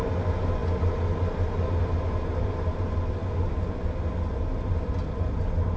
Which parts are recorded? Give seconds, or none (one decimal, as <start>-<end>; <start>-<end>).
0.0-5.8